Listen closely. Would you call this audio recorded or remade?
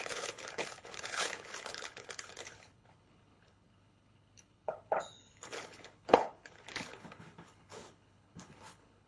remade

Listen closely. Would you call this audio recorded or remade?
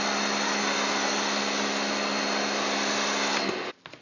recorded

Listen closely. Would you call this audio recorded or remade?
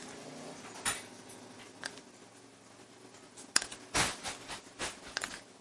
recorded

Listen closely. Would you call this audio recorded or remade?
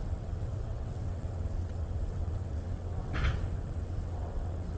remade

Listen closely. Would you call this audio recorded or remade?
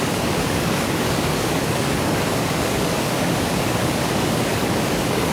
remade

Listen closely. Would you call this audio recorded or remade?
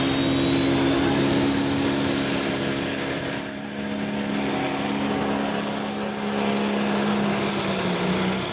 recorded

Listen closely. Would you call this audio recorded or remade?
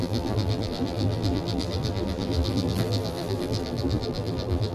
remade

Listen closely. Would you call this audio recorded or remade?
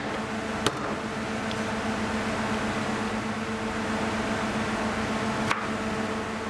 recorded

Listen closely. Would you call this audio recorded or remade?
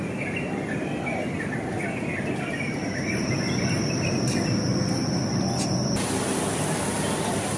recorded